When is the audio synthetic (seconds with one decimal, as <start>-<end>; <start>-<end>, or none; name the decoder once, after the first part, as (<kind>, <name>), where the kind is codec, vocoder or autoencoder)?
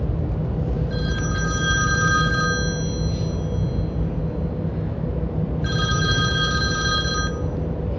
none